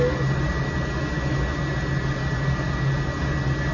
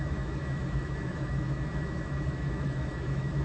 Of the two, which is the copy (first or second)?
second